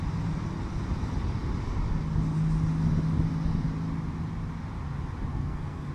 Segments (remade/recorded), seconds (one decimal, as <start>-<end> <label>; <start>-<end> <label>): 0.0-5.3 recorded; 5.3-5.9 remade